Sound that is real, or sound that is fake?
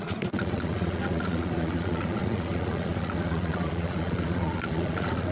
fake